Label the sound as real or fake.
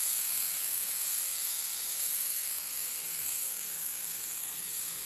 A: fake